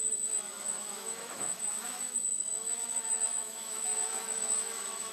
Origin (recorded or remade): remade